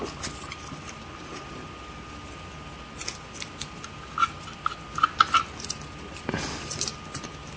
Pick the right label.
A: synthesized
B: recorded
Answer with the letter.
B